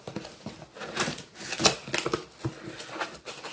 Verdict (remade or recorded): recorded